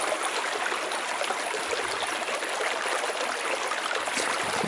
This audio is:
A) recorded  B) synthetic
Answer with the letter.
A